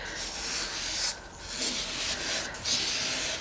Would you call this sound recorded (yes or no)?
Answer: yes